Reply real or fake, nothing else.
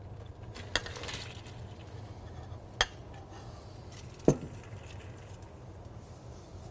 real